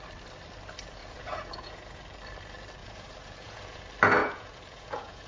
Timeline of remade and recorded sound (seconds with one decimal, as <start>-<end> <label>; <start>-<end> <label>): 0.0-1.0 recorded; 1.0-2.0 remade; 2.0-2.8 recorded; 2.8-3.8 remade; 3.8-4.2 recorded; 4.2-5.3 remade